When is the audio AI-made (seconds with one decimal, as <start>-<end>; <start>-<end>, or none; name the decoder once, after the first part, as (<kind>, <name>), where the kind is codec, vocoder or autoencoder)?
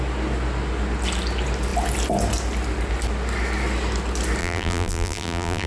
4.4-5.7 (vocoder, BigVGAN v2)